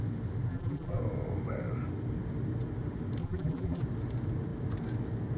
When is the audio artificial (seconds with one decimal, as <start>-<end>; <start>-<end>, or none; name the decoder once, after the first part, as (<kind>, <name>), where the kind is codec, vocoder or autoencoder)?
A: 0.5-1.0 (vocoder, BigVGAN v2); 3.2-3.8